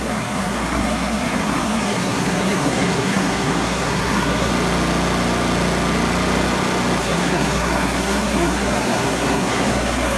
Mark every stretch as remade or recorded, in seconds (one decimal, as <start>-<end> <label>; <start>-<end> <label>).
0.0-4.5 remade; 4.5-7.0 recorded; 7.0-10.2 remade

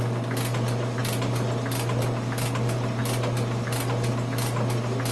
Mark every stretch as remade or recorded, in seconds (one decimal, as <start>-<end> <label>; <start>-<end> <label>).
0.0-5.1 recorded

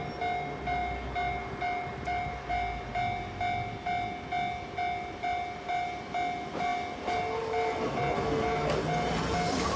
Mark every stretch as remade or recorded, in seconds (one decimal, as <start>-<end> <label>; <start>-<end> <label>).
0.0-9.8 recorded

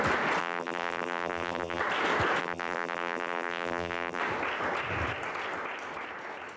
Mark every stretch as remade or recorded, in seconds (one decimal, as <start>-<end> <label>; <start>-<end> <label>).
0.0-0.4 recorded; 0.4-1.8 remade; 1.8-2.4 recorded; 2.4-4.2 remade; 4.2-6.6 recorded

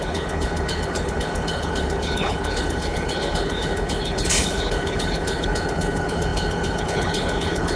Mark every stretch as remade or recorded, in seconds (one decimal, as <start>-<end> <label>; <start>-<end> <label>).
0.0-7.8 remade

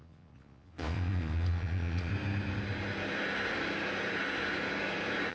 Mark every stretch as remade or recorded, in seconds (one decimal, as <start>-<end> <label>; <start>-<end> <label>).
0.0-2.1 remade; 2.1-5.3 recorded